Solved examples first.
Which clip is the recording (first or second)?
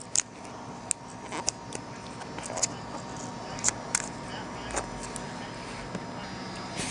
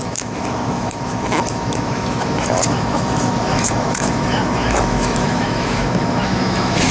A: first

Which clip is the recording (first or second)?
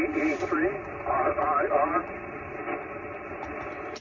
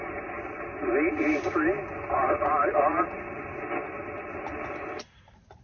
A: second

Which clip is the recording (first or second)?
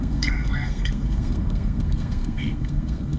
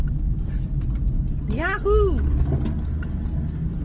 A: second